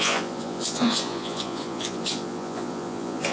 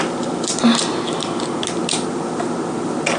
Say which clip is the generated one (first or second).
first